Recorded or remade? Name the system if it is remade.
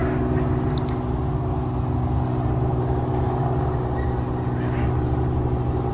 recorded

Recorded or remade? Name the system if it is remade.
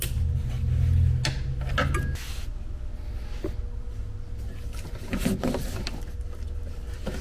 recorded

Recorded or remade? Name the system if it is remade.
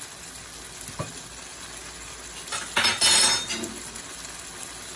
recorded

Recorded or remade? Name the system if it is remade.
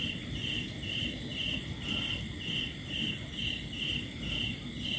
recorded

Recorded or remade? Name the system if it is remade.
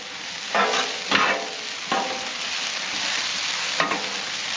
remade, vocoder, BigVGAN v2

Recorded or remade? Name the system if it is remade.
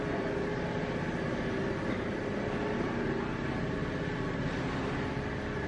recorded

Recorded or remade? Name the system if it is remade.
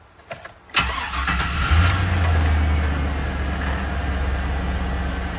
recorded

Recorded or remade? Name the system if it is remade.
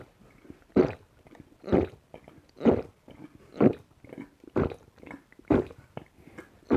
remade, vocoder, BigVGAN v2